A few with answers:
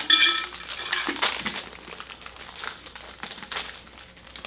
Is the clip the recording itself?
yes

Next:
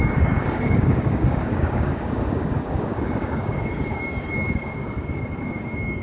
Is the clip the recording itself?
no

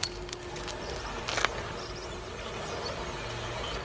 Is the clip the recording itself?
yes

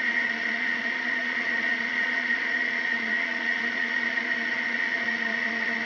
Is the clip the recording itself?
no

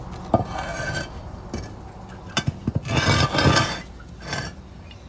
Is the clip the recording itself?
yes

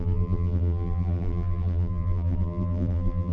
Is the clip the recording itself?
no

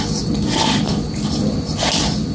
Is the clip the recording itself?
yes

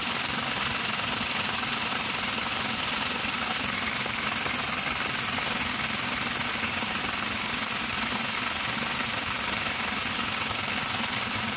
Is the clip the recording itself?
no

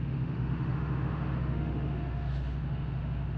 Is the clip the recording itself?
no